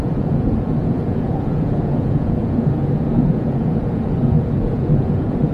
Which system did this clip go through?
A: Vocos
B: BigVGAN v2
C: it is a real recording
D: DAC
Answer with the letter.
A